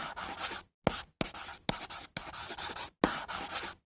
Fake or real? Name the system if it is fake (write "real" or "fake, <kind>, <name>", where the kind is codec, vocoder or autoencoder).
real